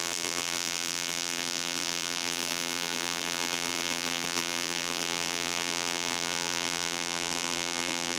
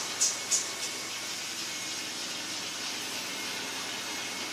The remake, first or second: first